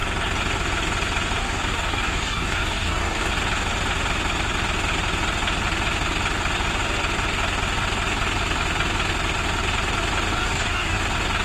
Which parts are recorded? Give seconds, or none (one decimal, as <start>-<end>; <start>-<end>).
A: 0.0-1.4; 3.3-10.4; 11.0-11.4